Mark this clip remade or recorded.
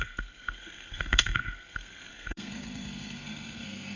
remade